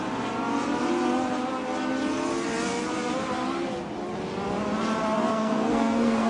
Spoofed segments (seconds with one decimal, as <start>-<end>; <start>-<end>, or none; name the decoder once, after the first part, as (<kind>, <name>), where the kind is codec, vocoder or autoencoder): 5.3-6.3 (codec, SNAC)